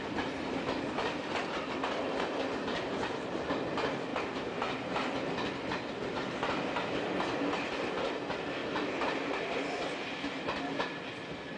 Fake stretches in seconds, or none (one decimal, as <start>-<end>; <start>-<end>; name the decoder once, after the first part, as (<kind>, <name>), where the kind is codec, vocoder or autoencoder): 4.1-5.3 (vocoder, BigVGAN v2)

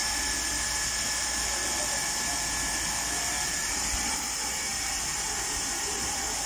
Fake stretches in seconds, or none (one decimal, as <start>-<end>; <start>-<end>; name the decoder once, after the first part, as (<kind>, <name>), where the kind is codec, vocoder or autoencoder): 1.2-6.5 (vocoder, BigVGAN v2)

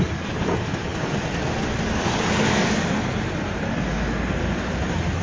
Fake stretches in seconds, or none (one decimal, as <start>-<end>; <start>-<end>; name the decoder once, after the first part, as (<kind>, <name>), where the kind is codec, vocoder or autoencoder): 0.9-3.8 (vocoder, BigVGAN v2)